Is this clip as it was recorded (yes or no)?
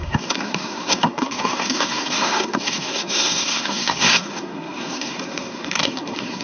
no